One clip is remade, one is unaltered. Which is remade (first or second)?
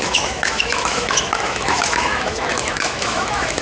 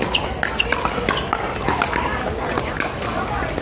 first